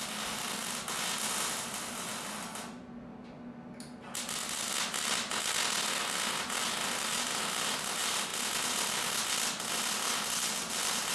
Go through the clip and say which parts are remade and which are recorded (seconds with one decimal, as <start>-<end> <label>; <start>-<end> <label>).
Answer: 0.0-0.6 remade; 0.6-1.7 recorded; 1.7-2.1 remade; 2.1-6.6 recorded; 6.6-8.3 remade; 8.3-10.7 recorded; 10.7-11.1 remade